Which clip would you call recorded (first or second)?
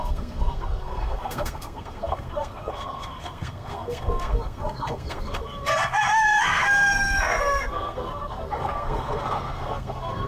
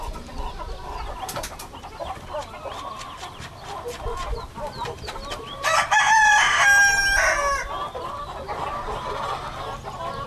second